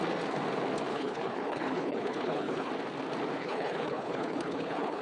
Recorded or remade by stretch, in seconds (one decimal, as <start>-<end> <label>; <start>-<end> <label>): 0.0-0.9 recorded; 0.9-2.7 remade; 2.7-3.4 recorded; 3.4-5.0 remade